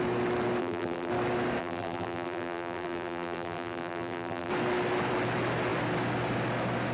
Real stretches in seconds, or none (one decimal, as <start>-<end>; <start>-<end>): 0.0-0.6; 1.1-1.6; 4.5-6.9